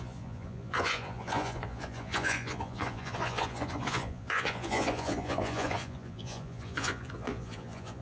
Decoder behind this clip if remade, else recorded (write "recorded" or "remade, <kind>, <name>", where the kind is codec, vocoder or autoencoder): remade, vocoder, Vocos